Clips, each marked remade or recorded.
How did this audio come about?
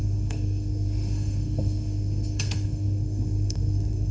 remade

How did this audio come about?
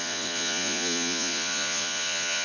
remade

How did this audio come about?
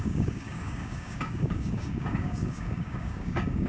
remade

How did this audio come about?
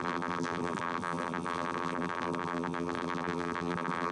remade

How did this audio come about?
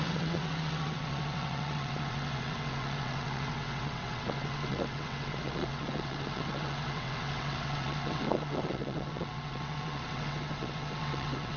remade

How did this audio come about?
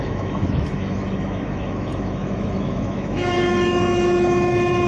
remade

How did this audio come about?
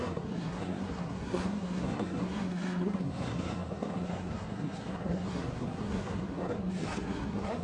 remade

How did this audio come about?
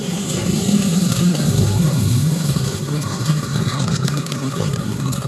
remade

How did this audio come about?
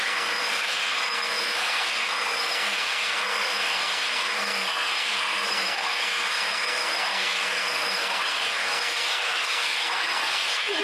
remade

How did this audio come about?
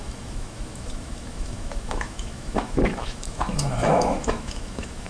remade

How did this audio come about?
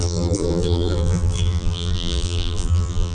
remade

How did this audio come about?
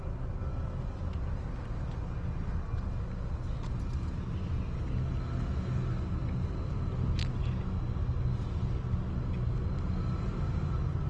recorded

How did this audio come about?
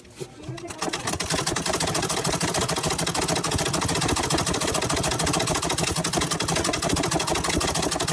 recorded